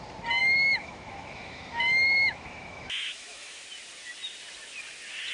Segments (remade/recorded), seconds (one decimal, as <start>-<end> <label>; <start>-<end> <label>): 0.0-0.4 recorded; 0.4-3.6 remade; 3.6-5.3 recorded